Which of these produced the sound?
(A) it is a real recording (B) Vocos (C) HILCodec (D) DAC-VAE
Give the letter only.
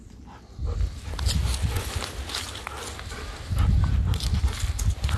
A